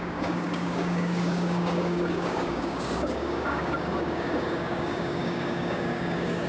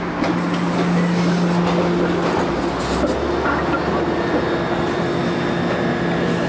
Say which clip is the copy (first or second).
first